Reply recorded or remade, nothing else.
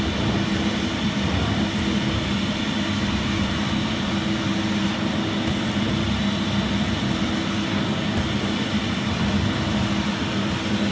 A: recorded